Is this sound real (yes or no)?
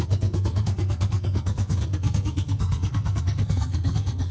no